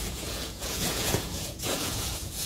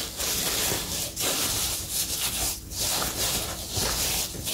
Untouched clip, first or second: second